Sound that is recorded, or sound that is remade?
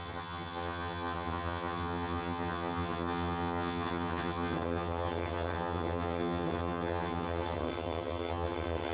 remade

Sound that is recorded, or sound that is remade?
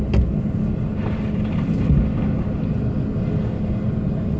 recorded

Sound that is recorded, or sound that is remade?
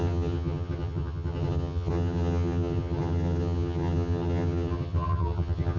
remade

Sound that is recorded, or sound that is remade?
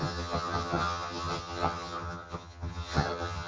remade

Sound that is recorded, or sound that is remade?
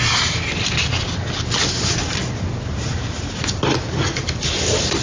recorded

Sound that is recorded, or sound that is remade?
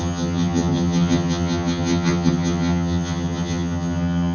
remade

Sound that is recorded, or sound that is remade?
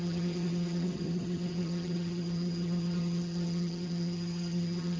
remade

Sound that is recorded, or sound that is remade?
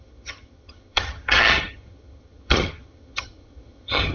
remade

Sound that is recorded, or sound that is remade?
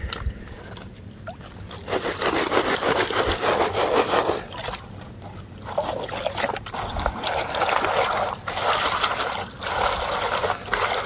recorded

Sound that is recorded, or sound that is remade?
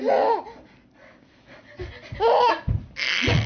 recorded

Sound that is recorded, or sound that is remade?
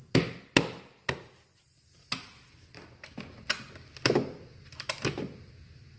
recorded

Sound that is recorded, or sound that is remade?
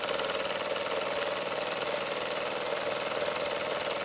recorded